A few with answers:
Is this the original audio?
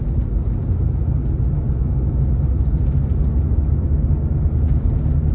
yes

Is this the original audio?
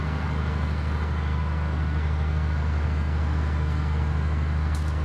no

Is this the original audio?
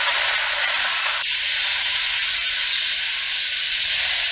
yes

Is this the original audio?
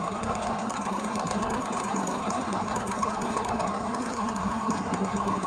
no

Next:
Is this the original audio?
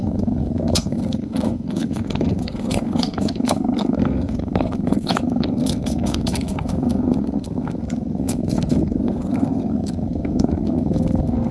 no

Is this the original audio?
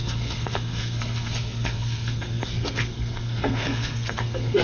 no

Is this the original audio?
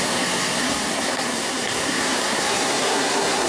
no